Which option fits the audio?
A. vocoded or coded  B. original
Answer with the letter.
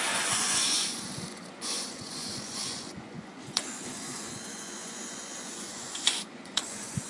A